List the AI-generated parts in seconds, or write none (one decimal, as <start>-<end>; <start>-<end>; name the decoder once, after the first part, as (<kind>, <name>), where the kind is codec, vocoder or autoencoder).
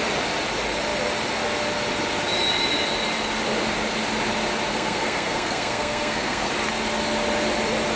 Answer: 4.7-6.5 (codec, SNAC)